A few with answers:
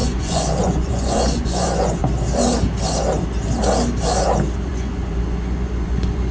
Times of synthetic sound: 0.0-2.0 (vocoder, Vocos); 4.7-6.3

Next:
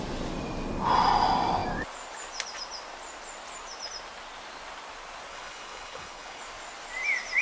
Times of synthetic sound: 5.3-6.4 (codec, HILCodec)

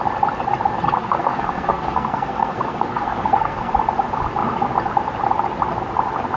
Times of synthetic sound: 1.0-3.7 (codec, SNAC)

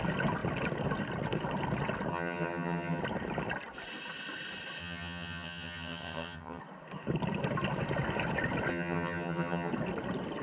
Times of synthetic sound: 2.1-3.0 (vocoder, HiFi-GAN); 4.8-6.6; 8.7-9.7

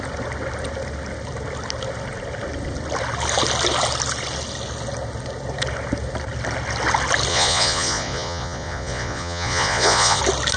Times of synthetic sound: 7.3-10.2 (vocoder, Vocos)